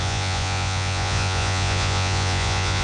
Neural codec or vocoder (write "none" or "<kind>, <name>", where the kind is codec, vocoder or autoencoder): vocoder, Vocos